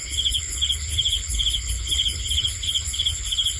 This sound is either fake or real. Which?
fake